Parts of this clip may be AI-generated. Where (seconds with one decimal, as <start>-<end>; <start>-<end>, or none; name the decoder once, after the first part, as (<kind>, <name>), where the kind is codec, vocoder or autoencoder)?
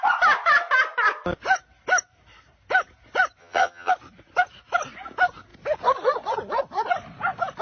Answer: 3.4-3.9 (vocoder, HiFi-GAN)